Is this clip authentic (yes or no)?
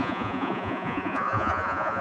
no